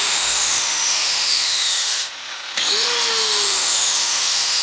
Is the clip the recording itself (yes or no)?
no